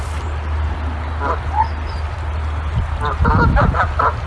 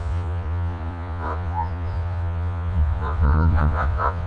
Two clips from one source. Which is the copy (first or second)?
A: second